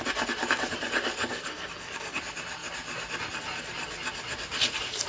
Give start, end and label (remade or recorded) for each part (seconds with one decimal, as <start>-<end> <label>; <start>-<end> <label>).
0.0-1.3 recorded; 1.3-2.2 remade; 2.2-5.1 recorded